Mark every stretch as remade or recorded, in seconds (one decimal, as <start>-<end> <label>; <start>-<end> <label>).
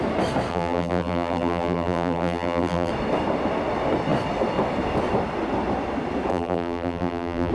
0.0-0.5 recorded; 0.5-2.9 remade; 2.9-6.3 recorded; 6.3-7.5 remade